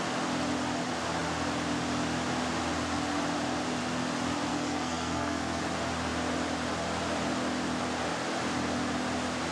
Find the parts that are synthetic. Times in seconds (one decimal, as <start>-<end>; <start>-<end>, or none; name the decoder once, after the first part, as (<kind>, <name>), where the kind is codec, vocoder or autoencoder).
4.5-5.6 (codec, SNAC)

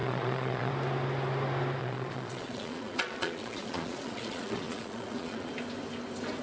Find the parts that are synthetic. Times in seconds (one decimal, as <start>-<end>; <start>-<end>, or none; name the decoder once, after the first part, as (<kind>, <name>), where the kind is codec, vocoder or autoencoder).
0.0-0.7 (vocoder, Vocos); 1.8-5.5